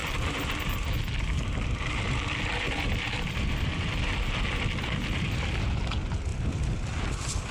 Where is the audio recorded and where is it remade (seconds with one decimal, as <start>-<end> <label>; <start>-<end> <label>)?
0.0-7.5 recorded